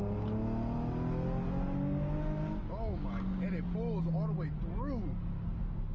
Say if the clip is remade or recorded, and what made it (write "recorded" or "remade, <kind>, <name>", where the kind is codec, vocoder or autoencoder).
recorded